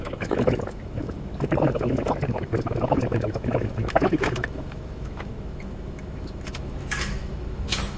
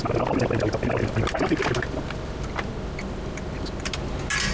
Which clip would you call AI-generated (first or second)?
first